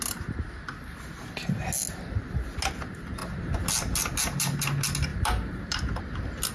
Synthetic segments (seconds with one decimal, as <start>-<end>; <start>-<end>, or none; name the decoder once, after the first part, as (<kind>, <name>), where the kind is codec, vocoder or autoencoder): 5.1-6.0 (vocoder, BigVGAN v2)